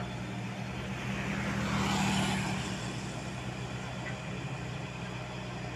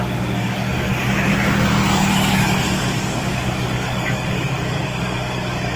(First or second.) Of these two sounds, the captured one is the first